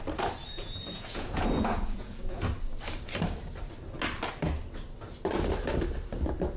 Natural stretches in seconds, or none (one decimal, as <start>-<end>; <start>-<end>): 0.0-0.4; 2.4-6.6

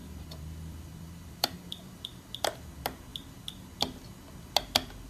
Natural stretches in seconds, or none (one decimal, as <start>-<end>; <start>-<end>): 2.3-5.1

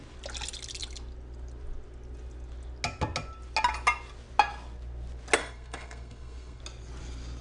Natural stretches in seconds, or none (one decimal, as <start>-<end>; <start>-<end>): 0.0-5.4; 6.6-7.4

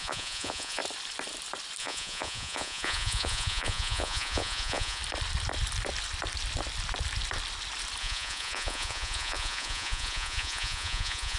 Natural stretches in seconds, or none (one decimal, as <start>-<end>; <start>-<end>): 0.8-1.8; 5.0-8.0

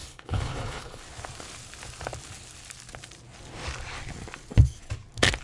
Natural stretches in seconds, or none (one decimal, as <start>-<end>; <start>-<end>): 1.0-5.4

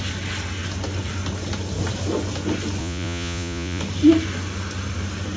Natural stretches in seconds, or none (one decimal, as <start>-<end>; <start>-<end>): 0.0-2.8; 3.8-5.4

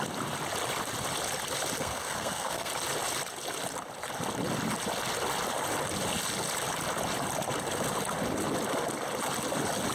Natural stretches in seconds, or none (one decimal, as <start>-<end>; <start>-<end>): 0.0-1.8; 2.7-9.9

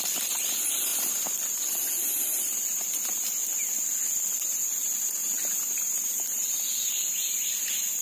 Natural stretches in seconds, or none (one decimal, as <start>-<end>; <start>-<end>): 0.9-1.9; 3.4-4.3; 5.2-5.9